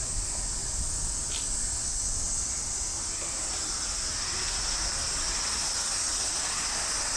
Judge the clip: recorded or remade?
recorded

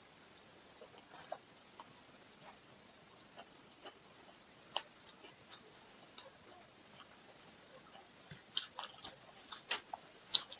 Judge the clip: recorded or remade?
recorded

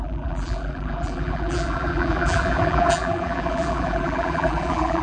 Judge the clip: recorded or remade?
remade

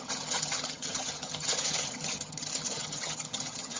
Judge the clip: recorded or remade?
remade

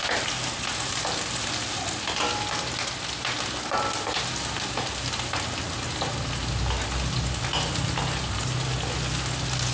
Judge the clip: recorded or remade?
recorded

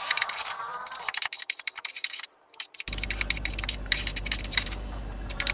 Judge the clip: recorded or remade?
remade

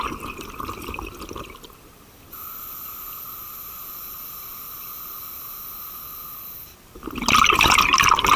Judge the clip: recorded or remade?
recorded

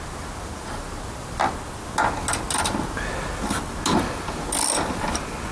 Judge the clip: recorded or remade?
recorded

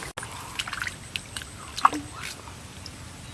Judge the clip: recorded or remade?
recorded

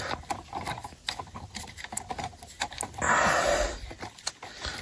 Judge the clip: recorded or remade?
recorded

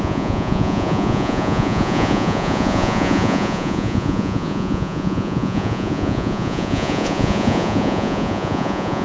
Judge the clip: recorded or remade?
remade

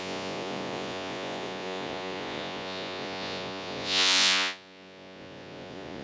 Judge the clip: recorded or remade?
remade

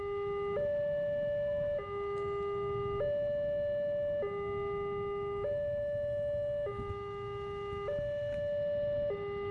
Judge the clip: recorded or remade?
recorded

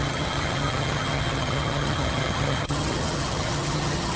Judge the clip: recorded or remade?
remade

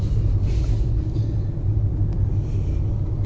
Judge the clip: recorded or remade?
recorded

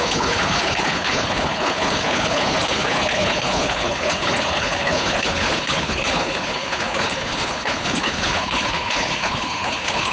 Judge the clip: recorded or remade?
remade